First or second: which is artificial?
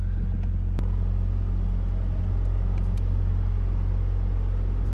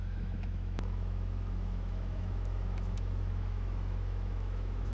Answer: second